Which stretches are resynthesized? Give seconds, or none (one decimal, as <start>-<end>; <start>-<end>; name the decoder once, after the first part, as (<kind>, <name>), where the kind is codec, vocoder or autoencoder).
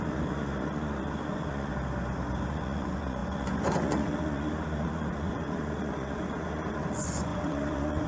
0.0-1.7 (vocoder, Vocos); 2.5-8.1